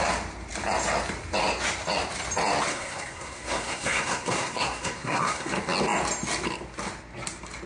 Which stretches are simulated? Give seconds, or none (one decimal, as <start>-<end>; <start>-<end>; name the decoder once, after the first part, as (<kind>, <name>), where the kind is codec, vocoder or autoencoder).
2.7-5.5 (codec, SNAC)

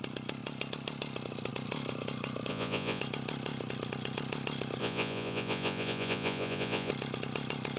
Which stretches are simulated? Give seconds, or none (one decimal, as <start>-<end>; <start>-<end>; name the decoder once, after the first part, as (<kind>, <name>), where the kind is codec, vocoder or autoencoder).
2.5-3.0 (vocoder, Vocos); 4.8-6.9

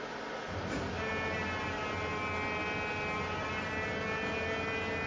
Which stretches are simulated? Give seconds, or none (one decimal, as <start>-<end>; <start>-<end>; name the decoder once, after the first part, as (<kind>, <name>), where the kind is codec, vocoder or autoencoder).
none

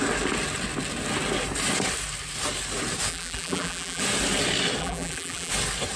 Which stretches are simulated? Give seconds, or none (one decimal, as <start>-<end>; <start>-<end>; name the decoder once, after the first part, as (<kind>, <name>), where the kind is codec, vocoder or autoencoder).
3.1-4.0 (vocoder, BigVGAN v2); 4.8-5.5